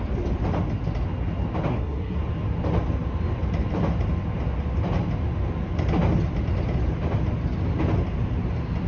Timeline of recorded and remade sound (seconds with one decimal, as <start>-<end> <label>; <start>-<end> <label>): 0.0-1.7 recorded; 1.7-2.2 remade; 2.2-8.9 recorded